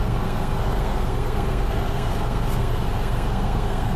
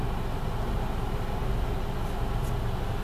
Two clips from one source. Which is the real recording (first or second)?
second